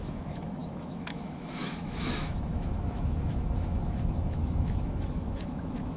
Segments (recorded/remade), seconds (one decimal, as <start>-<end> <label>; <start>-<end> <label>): 0.0-6.0 remade